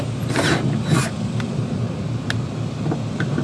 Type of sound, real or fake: real